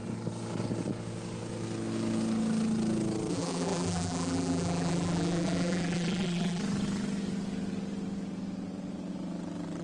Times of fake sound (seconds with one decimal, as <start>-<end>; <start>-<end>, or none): 3.3-6.6